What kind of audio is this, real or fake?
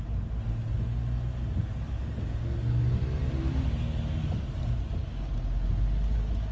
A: real